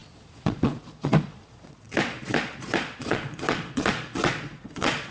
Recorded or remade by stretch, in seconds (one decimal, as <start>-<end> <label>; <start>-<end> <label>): 0.0-5.1 remade

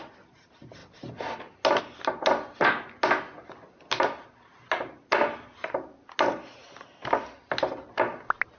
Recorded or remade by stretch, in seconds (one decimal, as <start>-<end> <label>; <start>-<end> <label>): 0.0-8.6 recorded

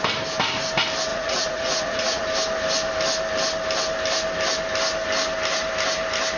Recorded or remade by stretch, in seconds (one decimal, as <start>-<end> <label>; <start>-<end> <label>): 0.0-1.1 recorded; 1.1-2.2 remade; 2.2-6.4 recorded

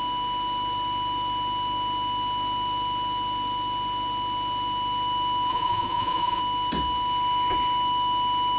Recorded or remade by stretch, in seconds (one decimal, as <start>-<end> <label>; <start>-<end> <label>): 0.0-5.5 recorded; 5.5-6.4 remade; 6.4-8.6 recorded

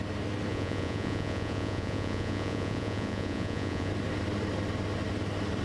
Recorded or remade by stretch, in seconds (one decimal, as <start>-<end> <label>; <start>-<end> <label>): 0.0-0.5 recorded; 0.5-3.9 remade; 3.9-5.6 recorded

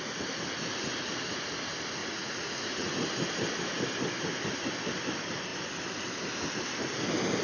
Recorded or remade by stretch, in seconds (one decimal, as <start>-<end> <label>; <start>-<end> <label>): 0.0-2.0 recorded; 2.0-2.9 remade; 2.9-7.4 recorded

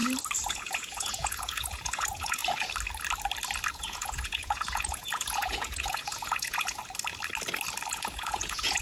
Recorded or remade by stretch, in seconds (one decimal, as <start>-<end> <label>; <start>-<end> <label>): 0.0-0.5 recorded; 0.5-2.4 remade; 2.4-3.7 recorded; 3.7-6.8 remade; 6.8-7.9 recorded; 7.9-8.8 remade

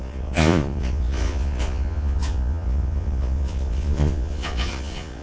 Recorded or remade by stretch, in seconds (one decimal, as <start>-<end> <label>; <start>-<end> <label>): 0.0-5.2 remade